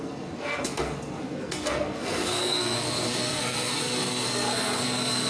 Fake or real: fake